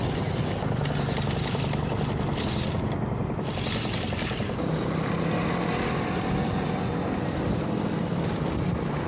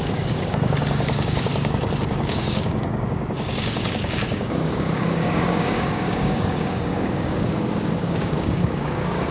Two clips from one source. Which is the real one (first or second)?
first